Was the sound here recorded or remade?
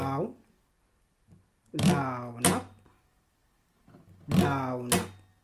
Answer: recorded